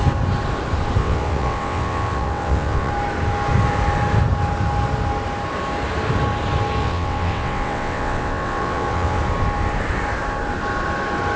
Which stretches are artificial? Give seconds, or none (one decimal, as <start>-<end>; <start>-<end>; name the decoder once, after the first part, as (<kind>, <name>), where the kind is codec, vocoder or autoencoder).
1.0-2.9 (vocoder, WaveNeXt); 6.8-9.2